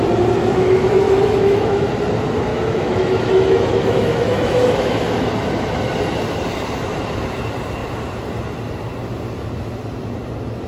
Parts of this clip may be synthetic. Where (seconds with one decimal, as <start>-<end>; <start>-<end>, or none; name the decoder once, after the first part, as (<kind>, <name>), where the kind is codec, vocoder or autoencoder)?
0.4-1.9 (autoencoder, DAC-VAE); 2.5-5.3